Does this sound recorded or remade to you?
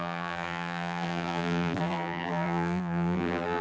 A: remade